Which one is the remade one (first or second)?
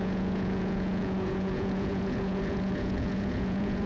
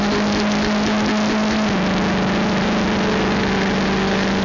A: first